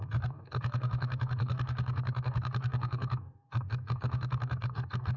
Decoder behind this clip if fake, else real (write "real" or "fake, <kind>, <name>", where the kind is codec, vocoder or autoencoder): fake, codec, DAC